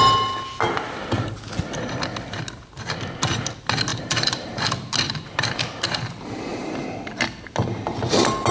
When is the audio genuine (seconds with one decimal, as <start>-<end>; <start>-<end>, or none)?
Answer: 0.0-3.9; 4.6-8.5